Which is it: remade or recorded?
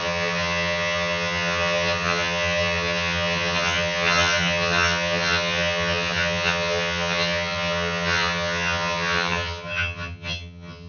remade